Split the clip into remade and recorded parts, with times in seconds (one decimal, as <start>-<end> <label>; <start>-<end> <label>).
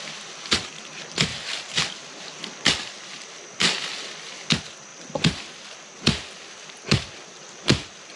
0.0-4.9 recorded; 4.9-5.5 remade; 5.5-8.2 recorded